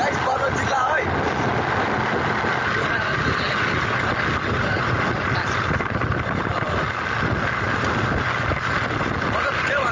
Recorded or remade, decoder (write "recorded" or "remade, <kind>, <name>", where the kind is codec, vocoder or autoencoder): recorded